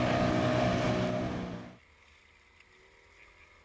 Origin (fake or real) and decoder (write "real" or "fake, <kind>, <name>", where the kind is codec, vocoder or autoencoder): real